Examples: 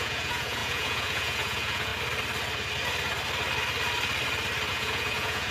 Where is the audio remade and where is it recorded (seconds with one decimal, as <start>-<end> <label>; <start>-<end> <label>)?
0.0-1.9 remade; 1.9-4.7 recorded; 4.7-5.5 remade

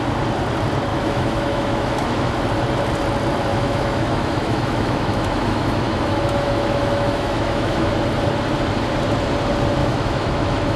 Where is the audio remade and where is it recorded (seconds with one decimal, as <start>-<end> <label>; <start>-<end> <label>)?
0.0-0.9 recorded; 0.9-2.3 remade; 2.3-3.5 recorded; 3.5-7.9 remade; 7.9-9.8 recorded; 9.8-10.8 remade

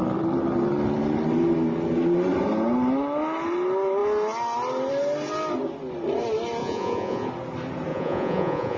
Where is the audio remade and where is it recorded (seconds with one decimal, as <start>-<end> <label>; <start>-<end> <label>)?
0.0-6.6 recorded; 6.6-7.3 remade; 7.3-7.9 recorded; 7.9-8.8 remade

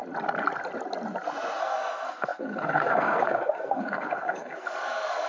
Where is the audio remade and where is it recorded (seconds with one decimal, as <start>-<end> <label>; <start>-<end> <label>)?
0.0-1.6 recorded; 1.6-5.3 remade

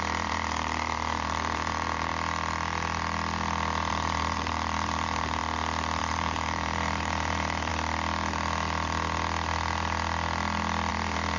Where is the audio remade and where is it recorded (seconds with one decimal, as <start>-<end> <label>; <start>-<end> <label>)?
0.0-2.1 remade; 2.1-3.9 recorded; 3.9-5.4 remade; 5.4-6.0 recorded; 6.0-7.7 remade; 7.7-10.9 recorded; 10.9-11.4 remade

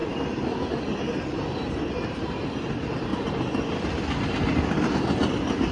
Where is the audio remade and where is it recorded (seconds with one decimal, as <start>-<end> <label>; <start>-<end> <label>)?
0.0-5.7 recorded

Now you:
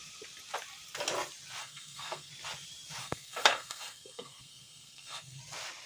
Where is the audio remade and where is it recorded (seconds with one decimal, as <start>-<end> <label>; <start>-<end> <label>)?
0.0-1.6 recorded; 1.6-2.3 remade; 2.3-3.0 recorded; 3.0-5.4 remade; 5.4-5.9 recorded

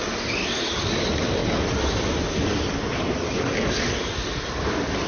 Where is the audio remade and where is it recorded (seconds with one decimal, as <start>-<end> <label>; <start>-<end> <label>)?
0.0-5.1 recorded